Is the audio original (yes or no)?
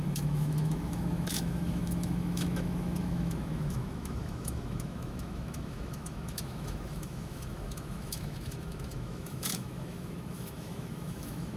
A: no